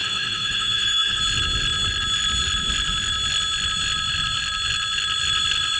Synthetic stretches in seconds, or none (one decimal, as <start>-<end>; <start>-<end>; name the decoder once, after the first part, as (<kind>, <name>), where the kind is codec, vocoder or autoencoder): 0.0-1.2 (autoencoder, DAC-VAE)